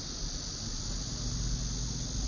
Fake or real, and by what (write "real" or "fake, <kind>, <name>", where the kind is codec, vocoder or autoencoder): real